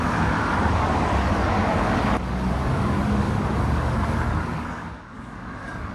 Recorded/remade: remade